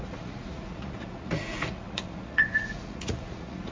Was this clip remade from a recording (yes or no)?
yes